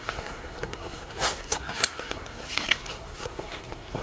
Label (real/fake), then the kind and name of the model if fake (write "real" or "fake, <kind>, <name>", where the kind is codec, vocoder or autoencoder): fake, codec, SNAC